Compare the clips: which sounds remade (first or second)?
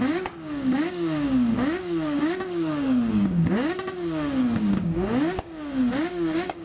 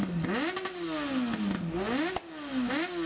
first